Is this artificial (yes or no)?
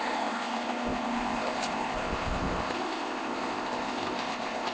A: yes